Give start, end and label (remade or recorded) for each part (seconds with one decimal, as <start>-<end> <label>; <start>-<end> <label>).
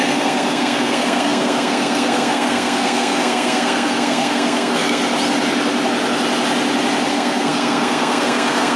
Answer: 0.0-5.0 remade; 5.0-7.1 recorded; 7.1-8.8 remade